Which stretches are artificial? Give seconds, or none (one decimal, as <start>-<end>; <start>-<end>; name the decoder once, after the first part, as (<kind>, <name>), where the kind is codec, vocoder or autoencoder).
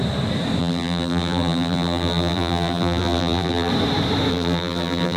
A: 0.6-3.7 (vocoder, BigVGAN v2); 4.3-5.2